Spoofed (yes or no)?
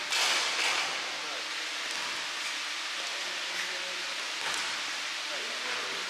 no